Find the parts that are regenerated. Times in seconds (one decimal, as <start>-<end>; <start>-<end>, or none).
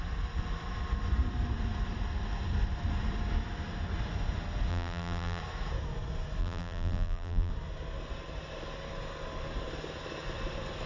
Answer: 4.7-5.4; 6.4-7.5